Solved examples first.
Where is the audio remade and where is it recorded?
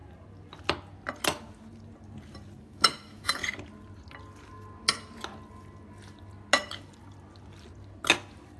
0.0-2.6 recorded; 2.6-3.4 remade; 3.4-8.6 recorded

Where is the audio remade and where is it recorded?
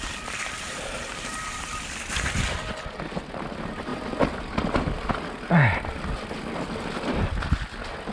0.0-8.1 recorded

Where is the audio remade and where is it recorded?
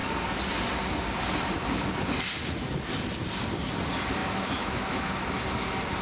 0.0-4.2 recorded; 4.2-5.1 remade; 5.1-6.0 recorded